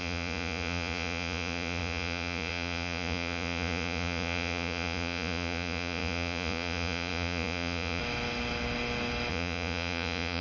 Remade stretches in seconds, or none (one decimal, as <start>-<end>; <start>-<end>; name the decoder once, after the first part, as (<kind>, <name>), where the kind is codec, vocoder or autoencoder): 0.0-8.0 (vocoder, Vocos); 9.3-10.4